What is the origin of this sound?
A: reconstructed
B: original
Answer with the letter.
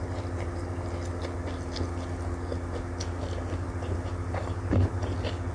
B